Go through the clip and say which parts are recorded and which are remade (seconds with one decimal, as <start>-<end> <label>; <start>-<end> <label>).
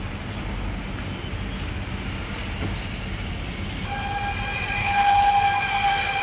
0.0-4.8 recorded; 4.8-5.3 remade; 5.3-6.2 recorded